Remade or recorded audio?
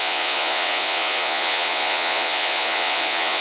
remade